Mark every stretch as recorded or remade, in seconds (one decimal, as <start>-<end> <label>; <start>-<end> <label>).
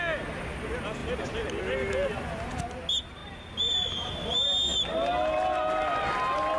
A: 0.0-1.0 recorded; 1.0-1.6 remade; 1.6-6.6 recorded